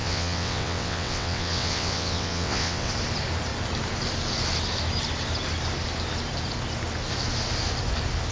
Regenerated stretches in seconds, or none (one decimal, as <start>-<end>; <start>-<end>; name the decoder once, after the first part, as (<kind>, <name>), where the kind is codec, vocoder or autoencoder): 0.0-2.9 (vocoder, WaveNeXt)